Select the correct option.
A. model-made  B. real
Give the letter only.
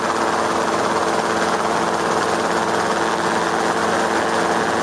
B